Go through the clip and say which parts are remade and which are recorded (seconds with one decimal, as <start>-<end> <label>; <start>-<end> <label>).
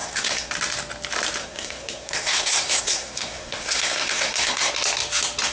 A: 0.0-0.5 remade; 0.5-1.4 recorded; 1.4-4.7 remade; 4.7-5.5 recorded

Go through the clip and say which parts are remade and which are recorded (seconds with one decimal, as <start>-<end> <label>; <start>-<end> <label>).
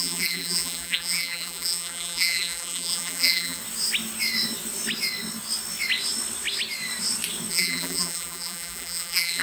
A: 0.0-3.6 remade; 3.6-7.5 recorded; 7.5-9.4 remade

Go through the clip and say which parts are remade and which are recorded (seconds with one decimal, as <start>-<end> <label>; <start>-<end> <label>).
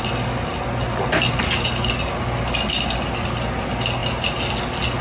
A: 0.0-5.0 recorded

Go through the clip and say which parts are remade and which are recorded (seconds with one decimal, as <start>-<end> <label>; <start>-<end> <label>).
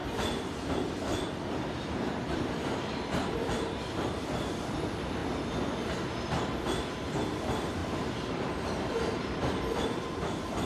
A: 0.0-5.2 remade; 5.2-6.3 recorded; 6.3-10.7 remade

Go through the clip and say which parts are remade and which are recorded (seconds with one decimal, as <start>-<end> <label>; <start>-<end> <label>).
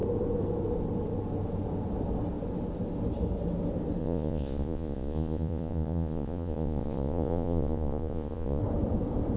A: 0.0-4.0 recorded; 4.0-8.6 remade; 8.6-9.4 recorded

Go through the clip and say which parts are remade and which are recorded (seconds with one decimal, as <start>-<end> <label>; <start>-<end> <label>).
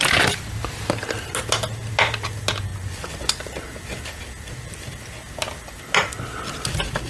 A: 0.0-7.1 recorded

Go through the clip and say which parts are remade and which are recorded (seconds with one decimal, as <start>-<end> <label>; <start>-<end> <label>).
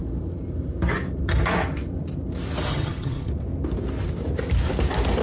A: 0.0-2.7 recorded; 2.7-3.3 remade; 3.3-5.2 recorded